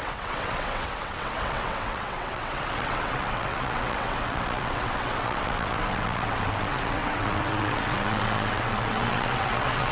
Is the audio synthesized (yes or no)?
yes